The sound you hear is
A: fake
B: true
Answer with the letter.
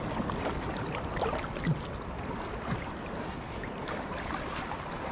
B